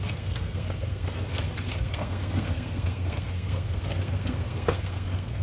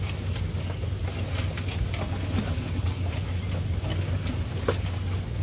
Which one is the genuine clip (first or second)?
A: second